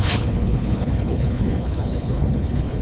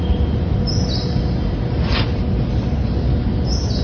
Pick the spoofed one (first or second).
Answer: first